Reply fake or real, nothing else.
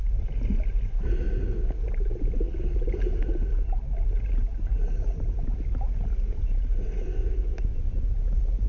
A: real